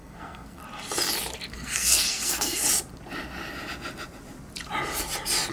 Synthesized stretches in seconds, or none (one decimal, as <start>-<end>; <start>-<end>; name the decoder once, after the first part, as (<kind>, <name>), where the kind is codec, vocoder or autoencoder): 0.0-0.6 (codec, SNAC); 1.5-2.6